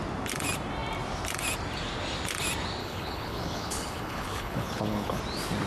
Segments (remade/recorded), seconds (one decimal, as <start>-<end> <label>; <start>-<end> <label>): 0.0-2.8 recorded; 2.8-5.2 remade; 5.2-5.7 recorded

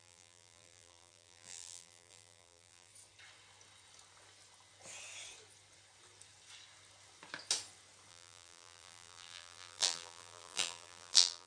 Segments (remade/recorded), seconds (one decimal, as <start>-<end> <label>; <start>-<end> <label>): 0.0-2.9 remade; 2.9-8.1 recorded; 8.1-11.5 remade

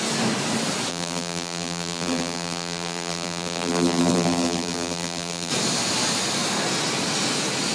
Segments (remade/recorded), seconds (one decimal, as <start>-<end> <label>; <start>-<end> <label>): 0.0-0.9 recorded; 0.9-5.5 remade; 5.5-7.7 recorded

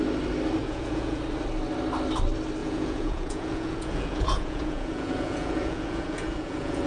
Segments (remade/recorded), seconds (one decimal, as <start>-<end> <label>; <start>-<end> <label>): 0.0-0.6 recorded; 0.6-1.2 remade; 1.2-2.6 recorded; 2.6-6.9 remade

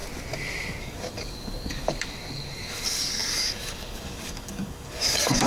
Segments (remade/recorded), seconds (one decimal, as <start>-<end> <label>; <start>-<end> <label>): 0.0-0.8 recorded; 0.8-5.5 remade

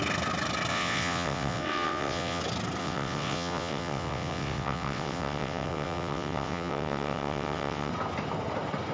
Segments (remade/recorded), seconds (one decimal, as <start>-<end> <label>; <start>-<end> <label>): 0.0-0.7 recorded; 0.7-2.4 remade; 2.4-2.8 recorded; 2.8-7.9 remade; 7.9-8.9 recorded